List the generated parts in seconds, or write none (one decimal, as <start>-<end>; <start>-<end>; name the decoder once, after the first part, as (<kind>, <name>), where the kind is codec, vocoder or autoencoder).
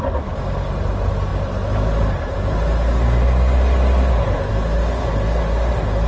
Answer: none